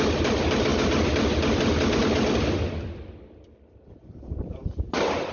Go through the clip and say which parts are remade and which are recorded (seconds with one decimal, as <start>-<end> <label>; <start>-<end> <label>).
0.0-5.3 remade